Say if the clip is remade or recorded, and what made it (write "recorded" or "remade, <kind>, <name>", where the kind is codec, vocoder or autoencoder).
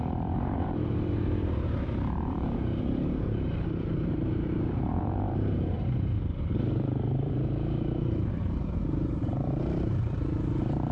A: remade, vocoder, BigVGAN v2